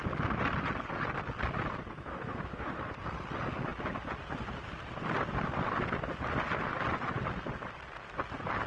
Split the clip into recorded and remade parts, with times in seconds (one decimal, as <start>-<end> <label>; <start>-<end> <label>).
0.0-2.1 recorded; 2.1-2.8 remade; 2.8-8.7 recorded